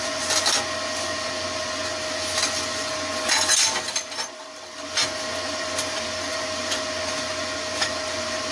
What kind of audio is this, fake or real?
real